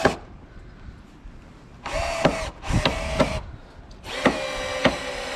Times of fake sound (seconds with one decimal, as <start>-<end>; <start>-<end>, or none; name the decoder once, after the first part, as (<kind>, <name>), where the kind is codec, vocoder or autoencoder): 4.8-5.4 (vocoder, BigVGAN v2)